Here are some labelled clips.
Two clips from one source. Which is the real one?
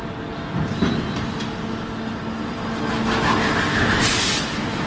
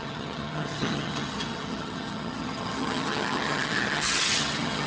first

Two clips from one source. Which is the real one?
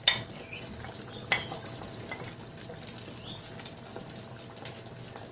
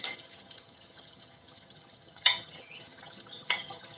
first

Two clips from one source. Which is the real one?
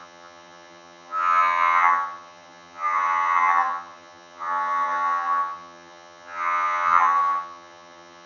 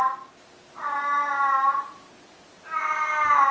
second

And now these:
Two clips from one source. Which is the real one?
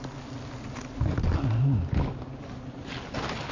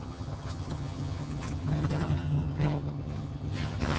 first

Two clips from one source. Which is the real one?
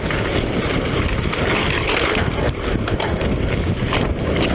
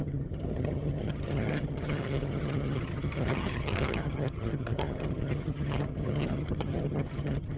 first